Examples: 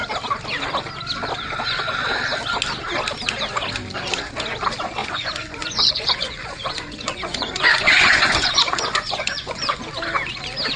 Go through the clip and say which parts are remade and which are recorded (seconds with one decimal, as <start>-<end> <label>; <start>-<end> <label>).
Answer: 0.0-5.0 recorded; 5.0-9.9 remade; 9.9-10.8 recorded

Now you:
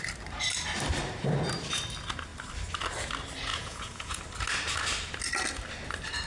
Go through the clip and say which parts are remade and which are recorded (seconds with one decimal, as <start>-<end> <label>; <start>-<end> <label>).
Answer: 0.0-3.5 recorded; 3.5-4.2 remade; 4.2-6.3 recorded

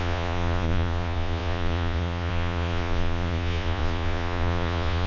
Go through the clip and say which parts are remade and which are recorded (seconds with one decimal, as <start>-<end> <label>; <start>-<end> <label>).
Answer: 0.0-5.1 remade

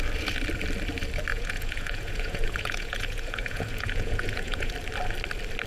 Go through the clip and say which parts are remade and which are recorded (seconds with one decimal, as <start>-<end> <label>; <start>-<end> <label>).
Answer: 0.0-1.3 recorded; 1.3-4.7 remade; 4.7-5.7 recorded

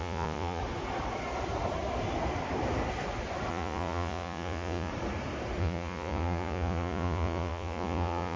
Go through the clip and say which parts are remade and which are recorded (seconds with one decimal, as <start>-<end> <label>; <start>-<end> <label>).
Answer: 0.0-0.6 remade; 0.6-3.5 recorded; 3.5-4.9 remade; 4.9-5.6 recorded; 5.6-8.4 remade

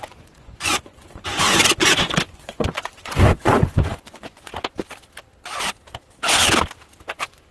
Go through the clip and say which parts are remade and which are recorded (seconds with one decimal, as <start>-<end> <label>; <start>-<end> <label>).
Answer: 0.0-4.5 remade; 4.5-7.1 recorded; 7.1-7.5 remade

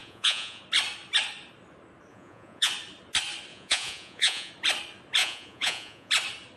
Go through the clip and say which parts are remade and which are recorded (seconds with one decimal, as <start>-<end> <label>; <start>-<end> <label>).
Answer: 0.0-0.6 remade; 0.6-2.1 recorded; 2.1-2.7 remade; 2.7-3.5 recorded; 3.5-4.5 remade; 4.5-5.2 recorded; 5.2-6.1 remade; 6.1-6.6 recorded